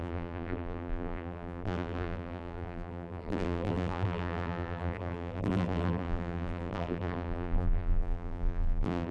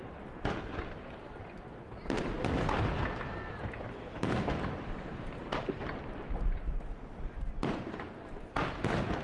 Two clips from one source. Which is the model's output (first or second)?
first